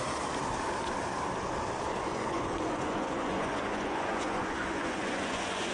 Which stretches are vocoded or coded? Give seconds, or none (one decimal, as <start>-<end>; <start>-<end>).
2.1-5.7